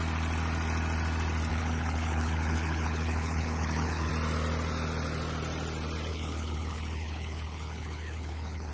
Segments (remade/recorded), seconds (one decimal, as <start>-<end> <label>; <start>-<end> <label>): 0.0-1.5 recorded; 1.5-4.1 remade; 4.1-6.1 recorded; 6.1-8.7 remade